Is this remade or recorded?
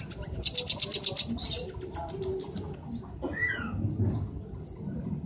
recorded